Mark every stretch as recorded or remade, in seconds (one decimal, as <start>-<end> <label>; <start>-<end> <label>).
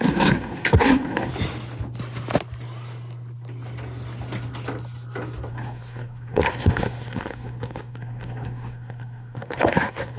0.0-1.3 remade; 1.3-5.5 recorded; 5.5-10.2 remade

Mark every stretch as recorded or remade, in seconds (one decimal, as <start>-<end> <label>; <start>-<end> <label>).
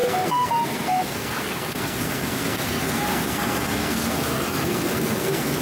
0.0-5.6 remade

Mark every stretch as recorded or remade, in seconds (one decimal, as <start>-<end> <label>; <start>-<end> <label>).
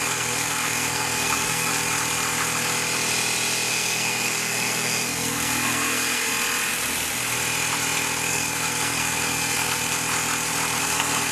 0.0-1.7 remade; 1.7-3.7 recorded; 3.7-6.3 remade; 6.3-8.3 recorded; 8.3-9.8 remade; 9.8-10.8 recorded; 10.8-11.3 remade